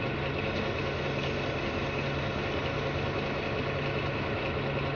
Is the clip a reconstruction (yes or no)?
no